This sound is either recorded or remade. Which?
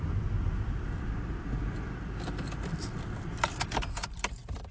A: remade